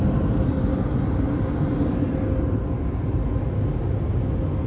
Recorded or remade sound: recorded